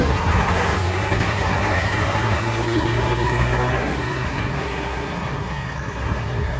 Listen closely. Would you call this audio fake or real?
fake